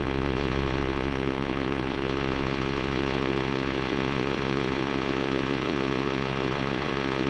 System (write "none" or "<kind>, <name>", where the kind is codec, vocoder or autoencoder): vocoder, Vocos